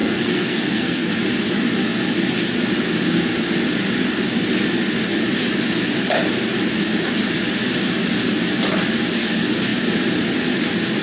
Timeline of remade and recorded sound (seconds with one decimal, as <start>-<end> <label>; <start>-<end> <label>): 0.0-1.1 remade; 1.1-11.0 recorded